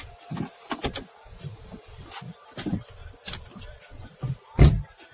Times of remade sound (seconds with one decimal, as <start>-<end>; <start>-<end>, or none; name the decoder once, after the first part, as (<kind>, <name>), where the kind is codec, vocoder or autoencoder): 3.0-4.6 (vocoder, BigVGAN v2)